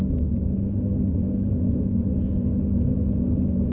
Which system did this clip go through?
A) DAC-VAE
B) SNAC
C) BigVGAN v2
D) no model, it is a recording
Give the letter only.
D